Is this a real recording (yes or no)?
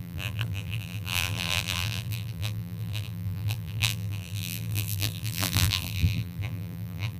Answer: no